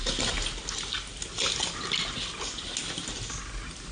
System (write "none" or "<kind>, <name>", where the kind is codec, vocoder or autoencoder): none